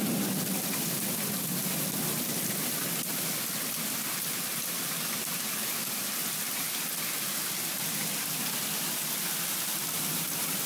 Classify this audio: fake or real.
real